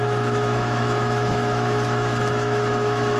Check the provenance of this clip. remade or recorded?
remade